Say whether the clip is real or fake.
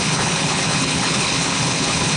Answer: fake